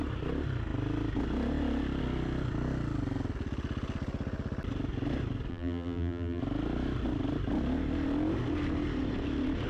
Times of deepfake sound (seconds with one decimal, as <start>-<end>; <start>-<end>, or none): 5.5-6.4